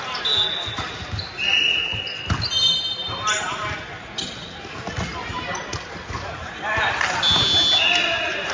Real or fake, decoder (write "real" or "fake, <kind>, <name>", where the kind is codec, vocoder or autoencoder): real